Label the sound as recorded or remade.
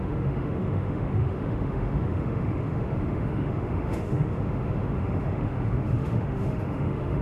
remade